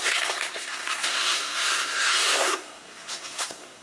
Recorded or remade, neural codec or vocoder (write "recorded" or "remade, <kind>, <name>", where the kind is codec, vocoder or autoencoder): remade, codec, SNAC